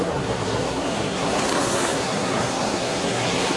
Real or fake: fake